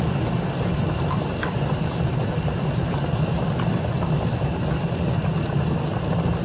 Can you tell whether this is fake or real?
fake